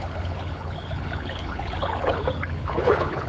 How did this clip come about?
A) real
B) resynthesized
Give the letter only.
B